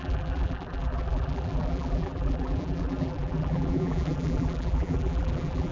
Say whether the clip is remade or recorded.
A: remade